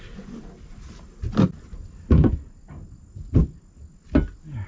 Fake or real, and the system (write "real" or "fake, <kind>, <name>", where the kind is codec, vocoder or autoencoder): real